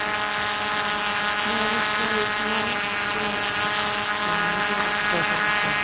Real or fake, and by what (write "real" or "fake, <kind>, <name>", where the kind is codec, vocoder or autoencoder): real